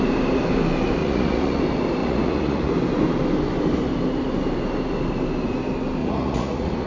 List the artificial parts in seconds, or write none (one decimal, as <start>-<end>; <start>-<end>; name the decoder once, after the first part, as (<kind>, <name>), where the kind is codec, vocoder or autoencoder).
1.0-1.6 (vocoder, Vocos); 2.0-2.7; 6.0-6.9